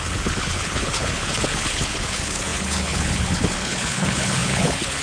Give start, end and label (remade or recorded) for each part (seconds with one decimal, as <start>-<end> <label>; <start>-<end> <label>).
0.0-5.0 remade